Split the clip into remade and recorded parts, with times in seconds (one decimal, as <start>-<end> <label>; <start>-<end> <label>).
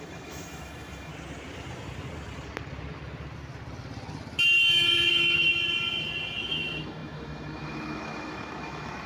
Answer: 0.0-1.1 remade; 1.1-5.1 recorded; 5.1-5.5 remade; 5.5-6.5 recorded; 6.5-9.1 remade